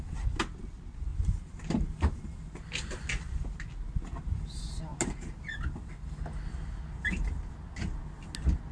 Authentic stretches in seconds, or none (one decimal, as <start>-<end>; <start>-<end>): 0.0-1.1; 2.9-8.7